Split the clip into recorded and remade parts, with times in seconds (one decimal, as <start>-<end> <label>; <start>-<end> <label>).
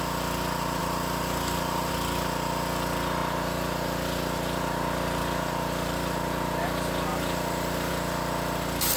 0.0-0.8 recorded; 0.8-1.9 remade; 1.9-7.1 recorded; 7.1-7.9 remade; 7.9-9.0 recorded